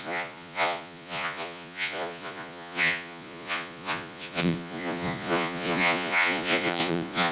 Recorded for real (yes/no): no